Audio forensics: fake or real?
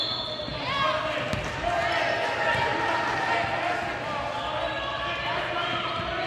real